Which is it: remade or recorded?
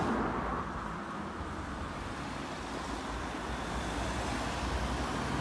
recorded